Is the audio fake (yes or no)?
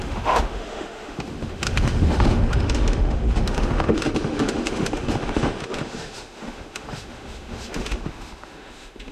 yes